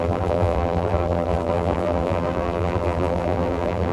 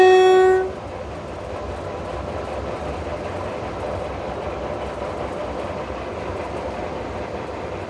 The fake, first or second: first